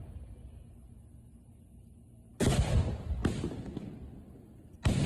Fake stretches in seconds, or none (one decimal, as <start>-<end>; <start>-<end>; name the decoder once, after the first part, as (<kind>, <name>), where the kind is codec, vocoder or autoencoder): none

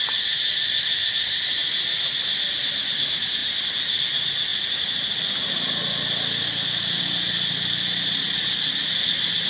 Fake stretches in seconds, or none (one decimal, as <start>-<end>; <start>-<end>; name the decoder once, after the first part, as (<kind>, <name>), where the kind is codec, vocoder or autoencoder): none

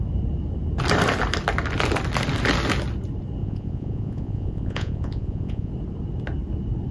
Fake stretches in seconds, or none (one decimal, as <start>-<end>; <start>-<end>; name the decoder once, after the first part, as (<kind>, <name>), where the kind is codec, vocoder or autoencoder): 3.4-5.7 (vocoder, Vocos)

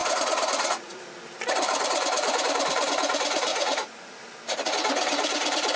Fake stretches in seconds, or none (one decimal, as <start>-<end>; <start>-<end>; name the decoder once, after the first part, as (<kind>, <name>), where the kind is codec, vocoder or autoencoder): 0.0-1.0 (vocoder, Vocos); 3.5-4.2

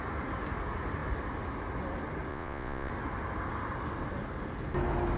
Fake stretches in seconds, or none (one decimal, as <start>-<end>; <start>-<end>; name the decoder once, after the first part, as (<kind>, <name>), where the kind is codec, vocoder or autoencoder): 2.3-2.9 (vocoder, Vocos)